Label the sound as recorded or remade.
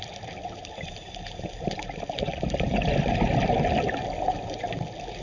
recorded